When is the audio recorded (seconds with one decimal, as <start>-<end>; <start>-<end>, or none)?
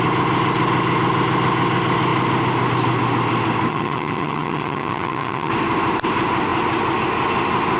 0.0-3.7; 5.5-7.8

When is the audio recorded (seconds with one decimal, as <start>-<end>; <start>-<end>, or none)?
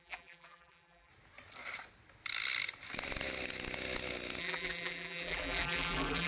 1.1-4.4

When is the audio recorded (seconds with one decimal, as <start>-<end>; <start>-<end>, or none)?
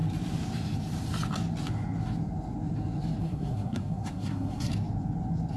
0.0-3.2; 4.7-5.6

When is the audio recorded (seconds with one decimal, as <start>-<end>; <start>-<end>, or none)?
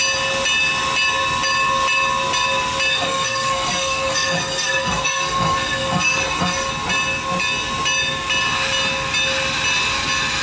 0.0-2.9; 6.7-10.4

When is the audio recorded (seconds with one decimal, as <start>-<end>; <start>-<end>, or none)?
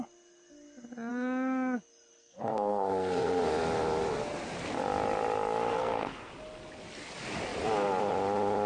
0.0-1.1; 1.8-2.2; 3.4-5.7; 6.3-8.7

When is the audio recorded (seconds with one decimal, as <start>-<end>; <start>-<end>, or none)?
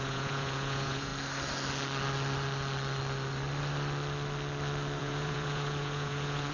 1.1-5.0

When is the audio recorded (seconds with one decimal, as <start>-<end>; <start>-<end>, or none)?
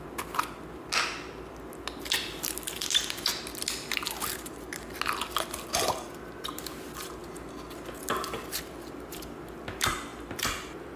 0.0-11.0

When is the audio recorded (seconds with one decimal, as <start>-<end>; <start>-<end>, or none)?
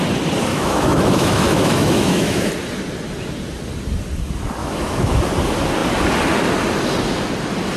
0.0-0.5; 2.5-4.6; 5.2-7.8